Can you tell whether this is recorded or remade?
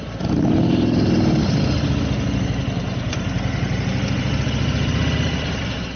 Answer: recorded